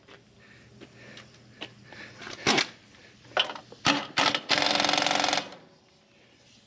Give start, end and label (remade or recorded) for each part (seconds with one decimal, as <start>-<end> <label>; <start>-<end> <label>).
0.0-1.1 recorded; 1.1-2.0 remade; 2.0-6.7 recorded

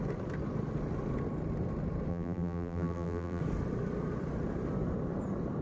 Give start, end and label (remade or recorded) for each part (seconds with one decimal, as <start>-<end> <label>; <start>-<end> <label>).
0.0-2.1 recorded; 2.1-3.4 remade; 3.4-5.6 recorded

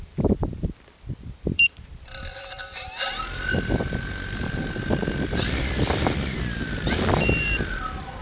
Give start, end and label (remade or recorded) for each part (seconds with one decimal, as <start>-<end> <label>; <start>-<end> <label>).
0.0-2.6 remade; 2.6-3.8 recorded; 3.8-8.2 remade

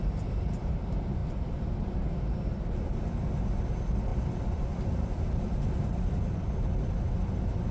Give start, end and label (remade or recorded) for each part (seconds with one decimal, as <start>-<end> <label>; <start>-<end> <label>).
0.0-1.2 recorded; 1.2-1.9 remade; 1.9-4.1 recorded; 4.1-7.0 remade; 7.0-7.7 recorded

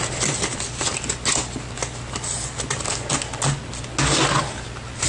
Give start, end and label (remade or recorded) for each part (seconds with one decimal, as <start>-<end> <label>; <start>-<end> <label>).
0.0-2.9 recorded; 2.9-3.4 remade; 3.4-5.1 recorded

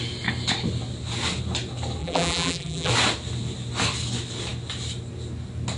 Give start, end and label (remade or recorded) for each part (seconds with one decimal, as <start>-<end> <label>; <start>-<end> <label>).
0.0-2.0 recorded; 2.0-2.9 remade; 2.9-5.8 recorded